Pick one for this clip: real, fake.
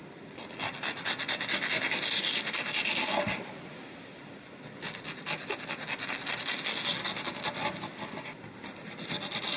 real